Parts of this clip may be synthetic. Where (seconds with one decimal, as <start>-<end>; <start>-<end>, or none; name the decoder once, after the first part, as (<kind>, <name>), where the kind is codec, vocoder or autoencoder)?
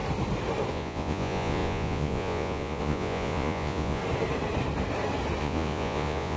0.7-4.0 (vocoder, Vocos); 5.4-6.4